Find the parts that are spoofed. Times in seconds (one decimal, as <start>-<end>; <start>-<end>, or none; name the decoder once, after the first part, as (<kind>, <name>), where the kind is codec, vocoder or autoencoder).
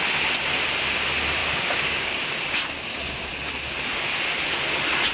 1.4-3.3 (codec, DAC)